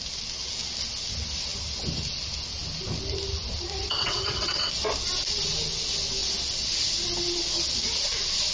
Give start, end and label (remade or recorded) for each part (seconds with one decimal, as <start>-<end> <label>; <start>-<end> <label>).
0.0-3.8 recorded; 3.8-4.7 remade; 4.7-8.5 recorded